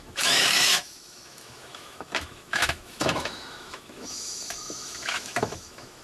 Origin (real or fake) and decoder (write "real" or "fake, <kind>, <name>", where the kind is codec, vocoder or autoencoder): fake, autoencoder, DAC-VAE